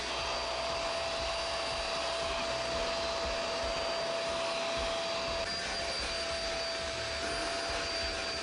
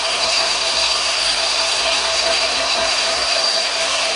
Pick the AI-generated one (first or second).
second